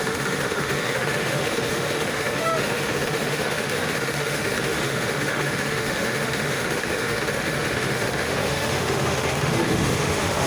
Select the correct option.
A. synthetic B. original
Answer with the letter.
A